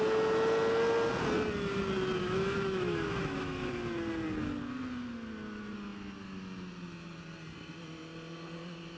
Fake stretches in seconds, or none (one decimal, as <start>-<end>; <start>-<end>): 2.2-3.7